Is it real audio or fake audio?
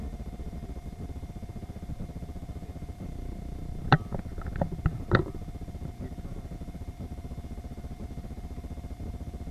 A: fake